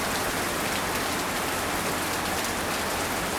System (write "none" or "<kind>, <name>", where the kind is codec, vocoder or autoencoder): none